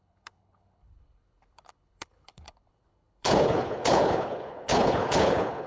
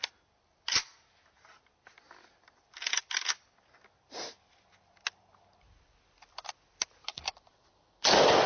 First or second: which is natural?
second